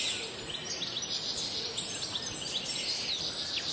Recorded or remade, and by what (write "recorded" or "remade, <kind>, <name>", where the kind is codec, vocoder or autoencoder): recorded